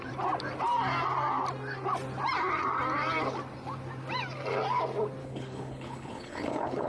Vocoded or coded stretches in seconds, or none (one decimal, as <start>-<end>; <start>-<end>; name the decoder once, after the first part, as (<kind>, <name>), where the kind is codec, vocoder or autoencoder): 5.2-6.9 (codec, HILCodec)

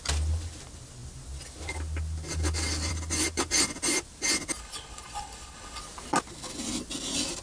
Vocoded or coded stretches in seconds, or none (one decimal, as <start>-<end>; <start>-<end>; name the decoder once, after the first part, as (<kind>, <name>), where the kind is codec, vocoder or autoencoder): 4.6-5.8 (codec, HILCodec)

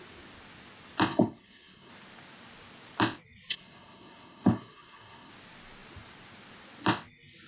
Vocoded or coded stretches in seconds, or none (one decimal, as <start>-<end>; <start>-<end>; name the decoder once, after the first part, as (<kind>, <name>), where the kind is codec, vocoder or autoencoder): 1.1-1.9 (codec, HILCodec); 3.5-5.3

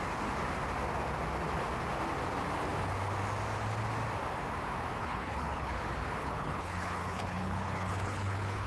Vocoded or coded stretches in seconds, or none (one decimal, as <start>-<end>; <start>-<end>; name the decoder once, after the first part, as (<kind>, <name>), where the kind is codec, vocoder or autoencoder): 5.0-5.8 (codec, HILCodec); 6.2-8.7

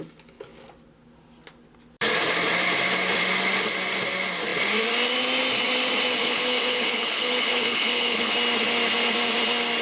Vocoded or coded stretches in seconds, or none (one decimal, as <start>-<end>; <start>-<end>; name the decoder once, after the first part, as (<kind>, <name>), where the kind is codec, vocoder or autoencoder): 6.2-8.3 (codec, HILCodec)

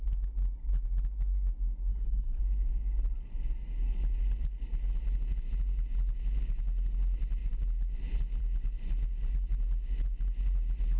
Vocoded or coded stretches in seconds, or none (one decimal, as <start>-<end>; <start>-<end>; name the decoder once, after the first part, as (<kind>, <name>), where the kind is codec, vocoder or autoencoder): 1.9-2.4 (codec, HILCodec)